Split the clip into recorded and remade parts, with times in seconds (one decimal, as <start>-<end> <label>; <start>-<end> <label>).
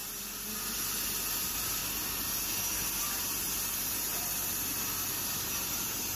0.0-1.8 remade; 1.8-3.0 recorded; 3.0-4.1 remade; 4.1-5.2 recorded; 5.2-6.2 remade